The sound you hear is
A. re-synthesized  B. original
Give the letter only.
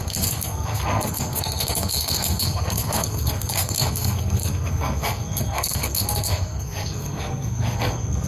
A